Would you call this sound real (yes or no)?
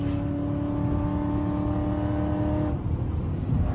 yes